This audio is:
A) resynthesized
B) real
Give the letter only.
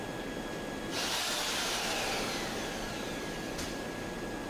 B